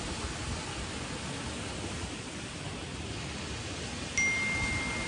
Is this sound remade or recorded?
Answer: recorded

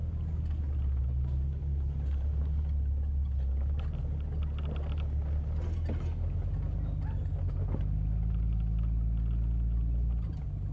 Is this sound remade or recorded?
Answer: recorded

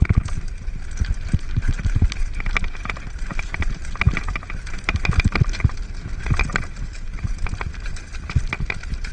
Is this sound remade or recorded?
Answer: recorded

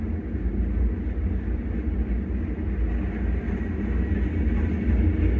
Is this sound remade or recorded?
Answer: recorded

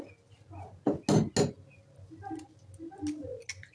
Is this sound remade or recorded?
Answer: recorded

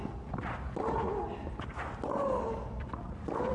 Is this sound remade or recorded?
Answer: recorded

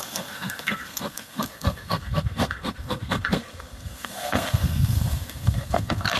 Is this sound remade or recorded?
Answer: remade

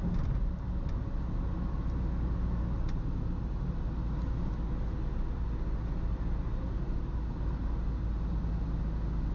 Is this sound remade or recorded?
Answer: recorded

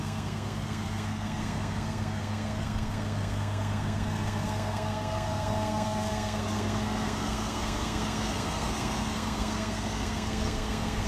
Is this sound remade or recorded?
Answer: remade